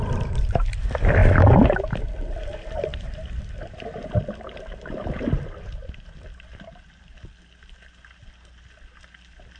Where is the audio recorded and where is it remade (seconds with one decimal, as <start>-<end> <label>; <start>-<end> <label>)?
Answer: 0.0-5.0 remade; 5.0-9.0 recorded; 9.0-9.6 remade